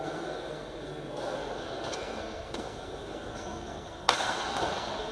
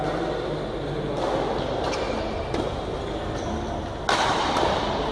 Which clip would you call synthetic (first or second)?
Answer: first